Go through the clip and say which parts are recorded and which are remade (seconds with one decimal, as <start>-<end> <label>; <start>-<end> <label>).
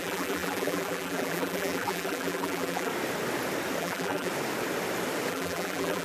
0.0-2.9 remade; 2.9-3.8 recorded; 3.8-4.3 remade; 4.3-5.3 recorded; 5.3-6.0 remade